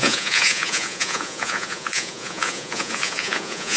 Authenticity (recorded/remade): remade